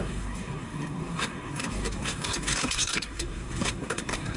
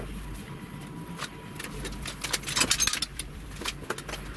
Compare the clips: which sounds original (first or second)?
second